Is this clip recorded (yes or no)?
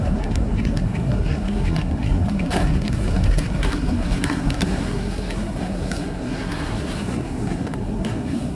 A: no